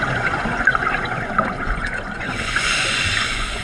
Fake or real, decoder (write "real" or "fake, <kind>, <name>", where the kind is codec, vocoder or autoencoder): fake, vocoder, Vocos